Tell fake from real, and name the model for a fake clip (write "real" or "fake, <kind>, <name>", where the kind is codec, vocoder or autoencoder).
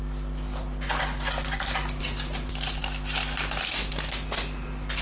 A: real